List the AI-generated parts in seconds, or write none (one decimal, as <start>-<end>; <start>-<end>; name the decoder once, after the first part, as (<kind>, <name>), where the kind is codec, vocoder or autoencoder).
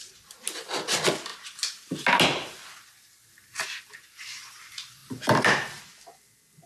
5.0-5.8 (vocoder, BigVGAN v2)